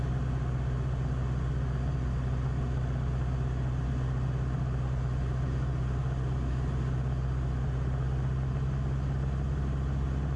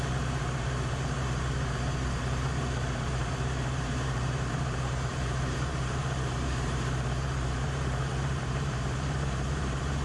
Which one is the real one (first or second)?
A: first